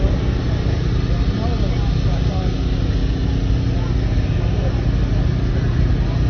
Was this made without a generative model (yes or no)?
yes